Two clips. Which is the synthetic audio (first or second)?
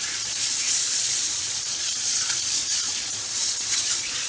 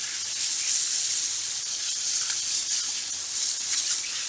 first